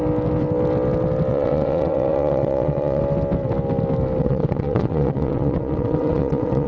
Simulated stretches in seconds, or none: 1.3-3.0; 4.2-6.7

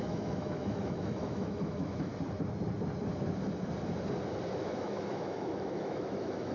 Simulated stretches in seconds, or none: 0.0-2.1; 4.5-6.5

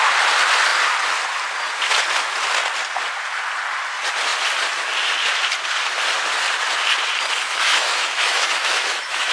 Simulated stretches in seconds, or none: 7.4-9.3

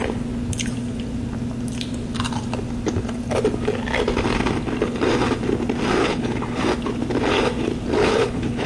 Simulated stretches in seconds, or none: 6.0-6.6; 8.0-8.7

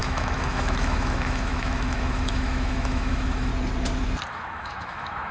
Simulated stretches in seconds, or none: 0.0-3.5; 4.3-5.3

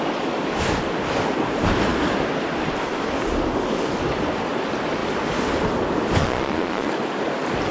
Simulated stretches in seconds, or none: 6.2-6.9

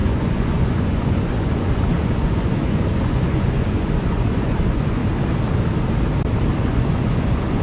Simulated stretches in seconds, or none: 0.0-5.0; 6.6-7.6

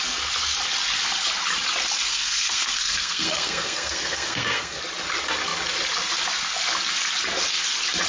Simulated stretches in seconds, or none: 2.1-4.8